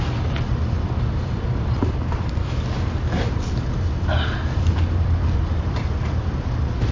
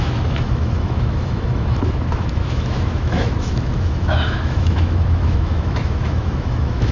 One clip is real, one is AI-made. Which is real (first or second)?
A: first